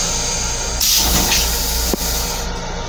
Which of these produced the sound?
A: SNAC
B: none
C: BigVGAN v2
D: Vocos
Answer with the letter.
B